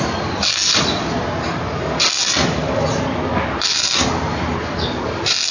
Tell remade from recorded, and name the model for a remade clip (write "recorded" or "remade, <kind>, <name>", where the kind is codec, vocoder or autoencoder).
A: recorded